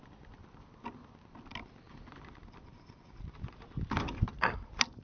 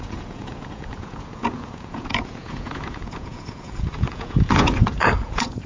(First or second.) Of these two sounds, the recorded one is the first